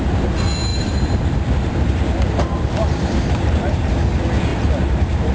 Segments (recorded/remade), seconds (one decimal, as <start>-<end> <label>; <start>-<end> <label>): 0.0-0.7 recorded; 0.7-3.9 remade; 3.9-4.5 recorded; 4.5-5.3 remade